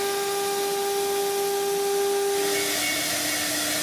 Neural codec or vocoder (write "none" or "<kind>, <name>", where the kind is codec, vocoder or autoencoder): none